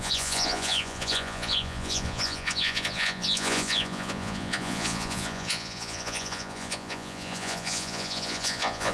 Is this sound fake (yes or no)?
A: yes